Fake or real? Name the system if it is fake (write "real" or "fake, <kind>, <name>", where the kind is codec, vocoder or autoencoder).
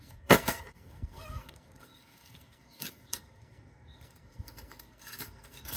fake, codec, SNAC